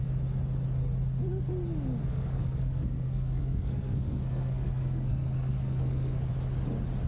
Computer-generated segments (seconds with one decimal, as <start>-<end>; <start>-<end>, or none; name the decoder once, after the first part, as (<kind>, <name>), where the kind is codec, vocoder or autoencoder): 2.0-6.3 (codec, SNAC)